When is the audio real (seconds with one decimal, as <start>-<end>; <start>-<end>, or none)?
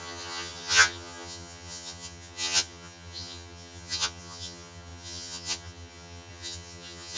none